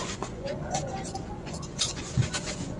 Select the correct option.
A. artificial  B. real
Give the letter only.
A